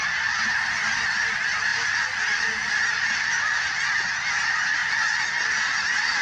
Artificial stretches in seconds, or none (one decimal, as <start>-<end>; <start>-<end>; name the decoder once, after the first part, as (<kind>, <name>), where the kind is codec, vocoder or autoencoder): 0.0-6.2 (vocoder, BigVGAN v2)